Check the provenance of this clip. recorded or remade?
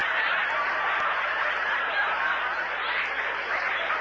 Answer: recorded